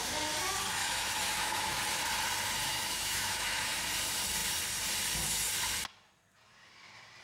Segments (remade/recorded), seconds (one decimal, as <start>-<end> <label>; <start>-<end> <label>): 0.0-0.8 recorded; 0.8-1.8 remade; 1.8-2.7 recorded; 2.7-3.7 remade; 3.7-7.2 recorded